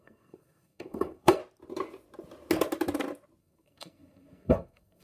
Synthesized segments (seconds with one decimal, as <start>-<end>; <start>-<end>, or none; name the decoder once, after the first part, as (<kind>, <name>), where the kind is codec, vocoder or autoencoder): 0.0-1.4 (codec, SNAC); 3.4-5.0